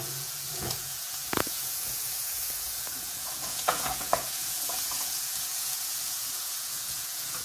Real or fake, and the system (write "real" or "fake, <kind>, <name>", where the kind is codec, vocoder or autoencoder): fake, vocoder, Vocos